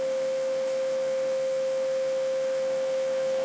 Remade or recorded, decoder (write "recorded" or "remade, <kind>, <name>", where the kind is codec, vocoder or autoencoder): remade, autoencoder, DAC-VAE